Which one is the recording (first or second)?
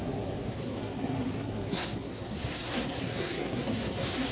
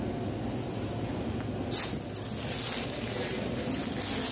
second